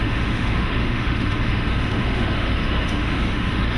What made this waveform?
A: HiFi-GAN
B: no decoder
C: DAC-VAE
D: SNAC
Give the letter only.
C